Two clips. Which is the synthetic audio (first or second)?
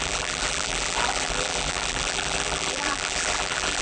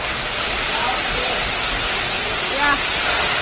first